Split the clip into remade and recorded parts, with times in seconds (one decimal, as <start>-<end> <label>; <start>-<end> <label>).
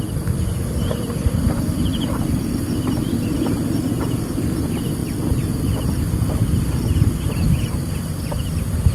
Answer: 0.0-1.9 recorded; 1.9-2.4 remade; 2.4-5.0 recorded; 5.0-7.0 remade; 7.0-8.9 recorded